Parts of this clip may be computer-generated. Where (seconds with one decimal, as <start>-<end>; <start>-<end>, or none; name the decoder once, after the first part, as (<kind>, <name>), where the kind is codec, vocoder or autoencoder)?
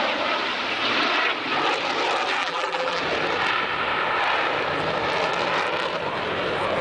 2.4-3.0 (vocoder, BigVGAN v2)